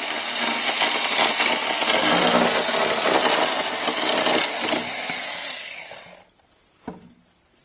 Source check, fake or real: real